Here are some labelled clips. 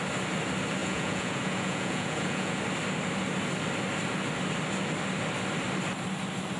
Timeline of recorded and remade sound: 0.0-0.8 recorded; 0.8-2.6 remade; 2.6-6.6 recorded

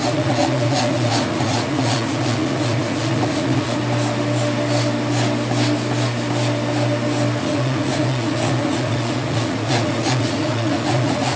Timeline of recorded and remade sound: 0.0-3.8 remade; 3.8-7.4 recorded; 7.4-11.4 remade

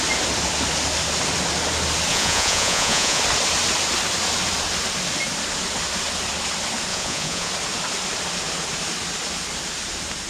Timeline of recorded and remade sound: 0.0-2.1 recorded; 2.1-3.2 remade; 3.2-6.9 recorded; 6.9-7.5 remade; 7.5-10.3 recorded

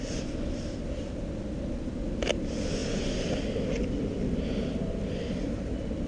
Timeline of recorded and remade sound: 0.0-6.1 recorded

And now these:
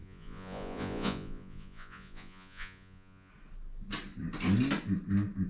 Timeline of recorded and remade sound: 0.0-3.3 remade; 3.3-5.5 recorded

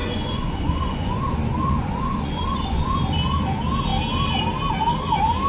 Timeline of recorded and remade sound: 0.0-3.0 remade; 3.0-5.5 recorded

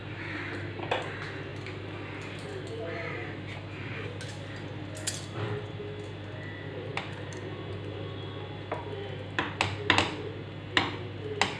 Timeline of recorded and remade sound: 0.0-11.6 recorded

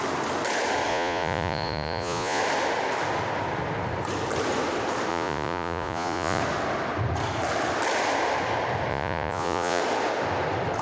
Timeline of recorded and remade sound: 0.0-0.9 recorded; 0.9-2.4 remade; 2.4-5.1 recorded; 5.1-6.4 remade; 6.4-8.9 recorded; 8.9-9.8 remade; 9.8-10.8 recorded